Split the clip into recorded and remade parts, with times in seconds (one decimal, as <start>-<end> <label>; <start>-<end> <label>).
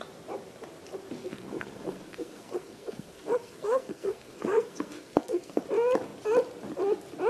0.0-1.2 recorded; 1.2-5.6 remade; 5.6-7.3 recorded